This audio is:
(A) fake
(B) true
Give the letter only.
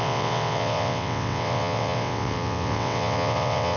A